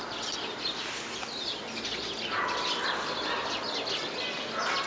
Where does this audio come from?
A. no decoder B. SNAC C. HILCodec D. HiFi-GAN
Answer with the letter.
A